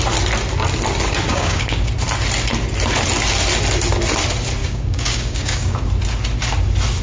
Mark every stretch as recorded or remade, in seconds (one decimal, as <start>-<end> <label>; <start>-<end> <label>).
0.0-1.3 recorded; 1.3-1.9 remade; 1.9-4.6 recorded; 4.6-5.8 remade; 5.8-7.0 recorded